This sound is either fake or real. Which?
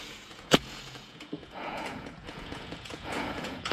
fake